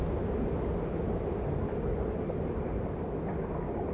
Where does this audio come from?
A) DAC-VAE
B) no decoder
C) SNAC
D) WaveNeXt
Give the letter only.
B